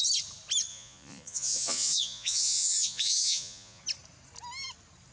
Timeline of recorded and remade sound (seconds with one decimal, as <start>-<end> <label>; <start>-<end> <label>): 0.0-0.7 recorded; 0.7-3.8 remade; 3.8-5.1 recorded